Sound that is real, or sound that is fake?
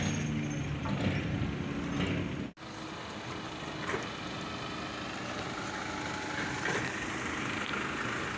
real